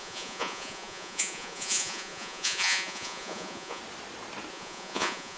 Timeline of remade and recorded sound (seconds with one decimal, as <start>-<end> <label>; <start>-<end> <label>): 0.0-3.8 remade; 3.8-4.5 recorded; 4.5-5.4 remade